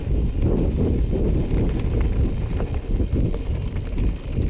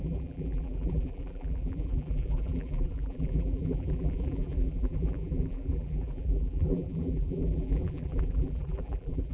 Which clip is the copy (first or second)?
second